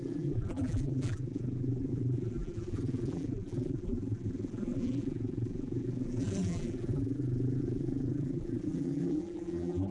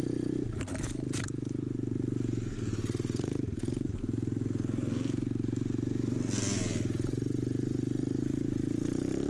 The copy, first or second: first